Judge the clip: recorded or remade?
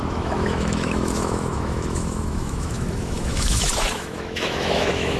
remade